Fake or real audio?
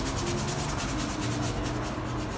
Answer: real